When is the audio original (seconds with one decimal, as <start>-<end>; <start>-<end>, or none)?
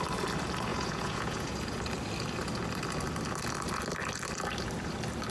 0.0-0.7; 1.8-5.3